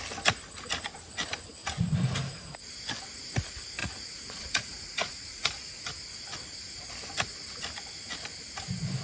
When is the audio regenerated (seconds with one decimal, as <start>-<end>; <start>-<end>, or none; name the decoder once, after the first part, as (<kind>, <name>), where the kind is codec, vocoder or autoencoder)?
1.6-2.5 (vocoder, Vocos); 3.8-5.8